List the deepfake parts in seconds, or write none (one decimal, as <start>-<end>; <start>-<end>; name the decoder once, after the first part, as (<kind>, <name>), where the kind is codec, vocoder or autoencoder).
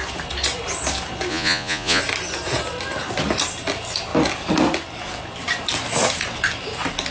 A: 1.3-2.0 (vocoder, Vocos)